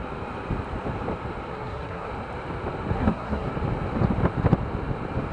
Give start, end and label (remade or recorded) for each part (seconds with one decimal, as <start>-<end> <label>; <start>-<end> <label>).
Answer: 0.0-1.5 recorded; 1.5-2.1 remade; 2.1-2.9 recorded; 2.9-3.5 remade; 3.5-5.3 recorded